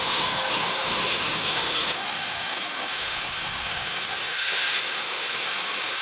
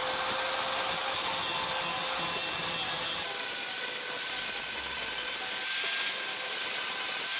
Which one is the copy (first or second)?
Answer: first